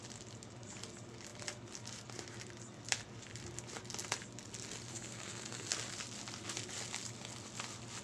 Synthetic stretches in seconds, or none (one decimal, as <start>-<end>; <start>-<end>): 4.9-5.7